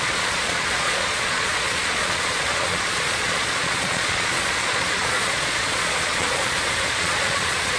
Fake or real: fake